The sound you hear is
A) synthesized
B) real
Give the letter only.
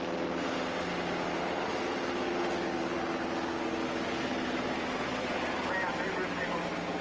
B